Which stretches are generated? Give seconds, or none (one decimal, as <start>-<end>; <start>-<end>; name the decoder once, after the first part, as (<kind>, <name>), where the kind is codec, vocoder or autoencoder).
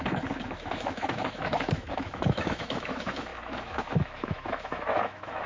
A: 0.0-5.5 (autoencoder, DAC-VAE)